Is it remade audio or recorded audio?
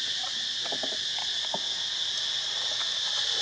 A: recorded